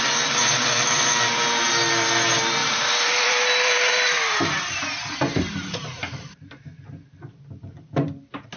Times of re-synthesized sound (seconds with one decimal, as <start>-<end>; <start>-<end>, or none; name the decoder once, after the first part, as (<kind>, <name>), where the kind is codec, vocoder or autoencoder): 0.4-1.7 (vocoder, BigVGAN v2); 2.6-6.6